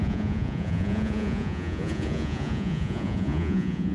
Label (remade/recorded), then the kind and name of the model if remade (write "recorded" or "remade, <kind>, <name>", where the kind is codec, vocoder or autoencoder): remade, vocoder, Vocos